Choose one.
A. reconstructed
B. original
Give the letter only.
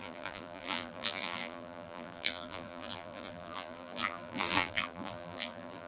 A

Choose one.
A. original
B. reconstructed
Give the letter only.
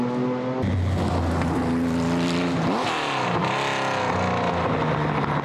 A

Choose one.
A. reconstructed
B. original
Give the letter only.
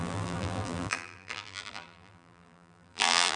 A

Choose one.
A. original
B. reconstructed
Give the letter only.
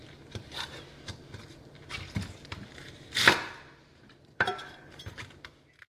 B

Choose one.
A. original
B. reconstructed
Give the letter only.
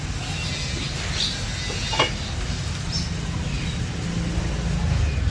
A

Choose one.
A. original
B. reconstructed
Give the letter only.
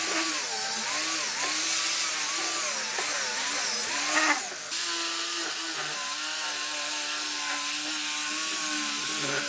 A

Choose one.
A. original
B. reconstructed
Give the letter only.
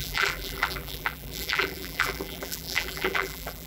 B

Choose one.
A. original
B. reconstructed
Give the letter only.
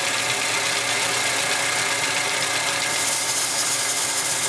A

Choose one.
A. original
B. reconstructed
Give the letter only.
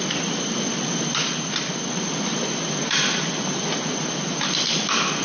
A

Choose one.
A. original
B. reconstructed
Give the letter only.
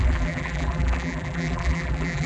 B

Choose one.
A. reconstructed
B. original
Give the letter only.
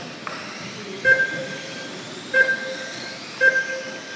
B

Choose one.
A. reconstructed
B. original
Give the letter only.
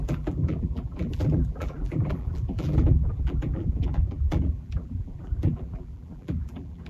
A